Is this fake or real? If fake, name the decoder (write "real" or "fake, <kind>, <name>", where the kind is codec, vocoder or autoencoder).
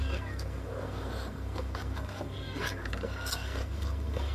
fake, codec, SNAC